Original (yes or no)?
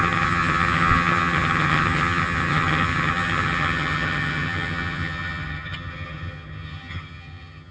no